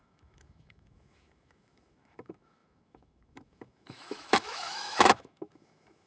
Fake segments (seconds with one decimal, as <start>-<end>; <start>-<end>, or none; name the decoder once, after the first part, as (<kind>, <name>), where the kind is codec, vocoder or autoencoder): 0.0-6.1 (autoencoder, DAC-VAE)